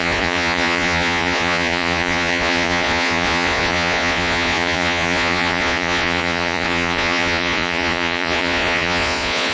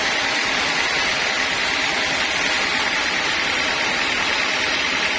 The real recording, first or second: second